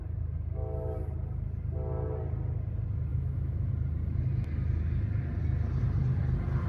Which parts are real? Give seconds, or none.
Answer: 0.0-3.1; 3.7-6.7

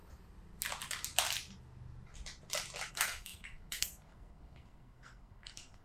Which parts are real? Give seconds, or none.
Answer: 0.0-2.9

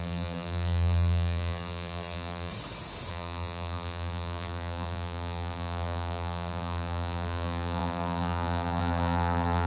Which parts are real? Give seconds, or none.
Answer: 2.5-3.1

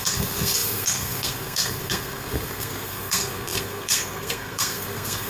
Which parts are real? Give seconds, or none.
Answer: none

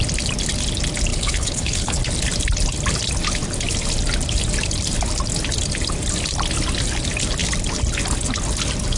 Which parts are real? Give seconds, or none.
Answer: 0.0-1.1; 2.0-9.0

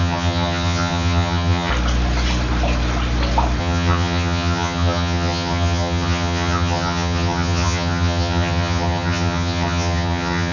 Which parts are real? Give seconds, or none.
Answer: 1.7-3.6